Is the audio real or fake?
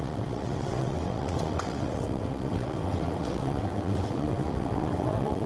fake